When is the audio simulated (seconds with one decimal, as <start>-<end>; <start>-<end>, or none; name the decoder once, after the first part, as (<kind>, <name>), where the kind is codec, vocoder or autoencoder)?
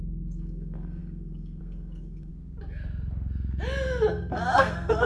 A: 0.0-2.3 (codec, SNAC); 4.1-5.1